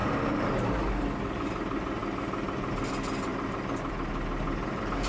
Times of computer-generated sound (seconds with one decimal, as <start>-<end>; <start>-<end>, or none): none